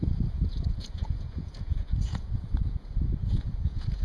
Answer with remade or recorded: remade